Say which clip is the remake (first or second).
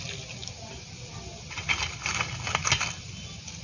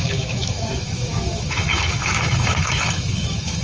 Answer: second